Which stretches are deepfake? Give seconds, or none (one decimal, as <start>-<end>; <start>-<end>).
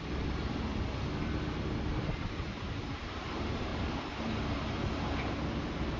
0.0-0.7; 2.2-3.7